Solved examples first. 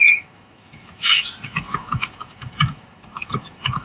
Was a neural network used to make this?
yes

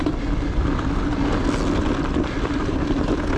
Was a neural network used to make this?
no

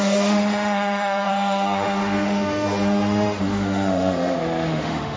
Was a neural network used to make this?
yes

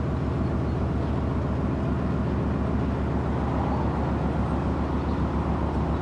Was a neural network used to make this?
no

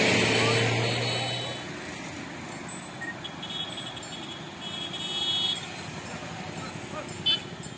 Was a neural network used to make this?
no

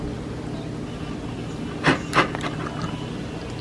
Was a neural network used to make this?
no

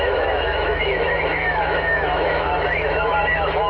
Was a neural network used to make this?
yes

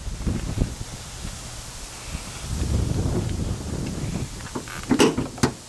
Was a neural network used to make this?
no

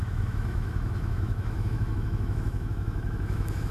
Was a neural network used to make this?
yes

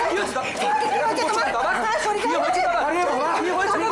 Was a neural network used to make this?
no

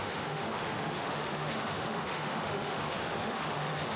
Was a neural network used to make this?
yes